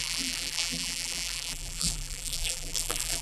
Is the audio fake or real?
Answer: fake